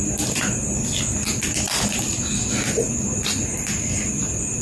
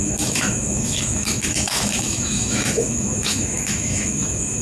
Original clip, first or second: first